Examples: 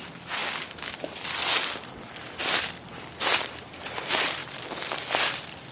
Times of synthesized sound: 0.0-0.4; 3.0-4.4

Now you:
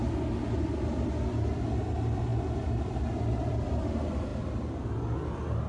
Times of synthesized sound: 2.3-3.9

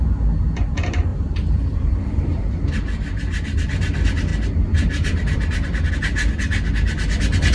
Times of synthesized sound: 1.1-2.7; 4.3-5.9

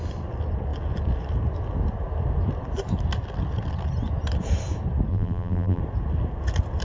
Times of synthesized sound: 5.1-5.8

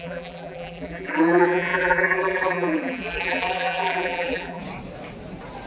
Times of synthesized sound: 0.0-4.6

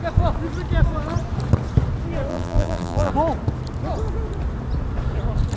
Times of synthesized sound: 2.3-3.1

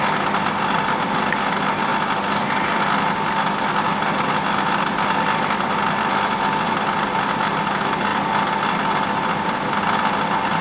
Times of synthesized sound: none